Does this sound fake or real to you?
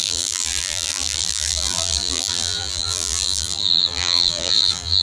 fake